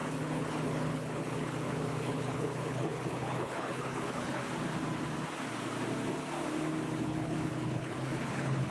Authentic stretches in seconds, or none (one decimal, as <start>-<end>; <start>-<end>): 4.4-7.0